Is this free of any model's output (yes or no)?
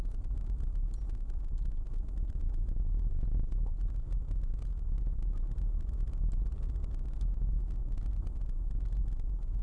yes